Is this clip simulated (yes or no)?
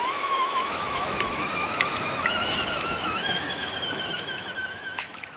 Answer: yes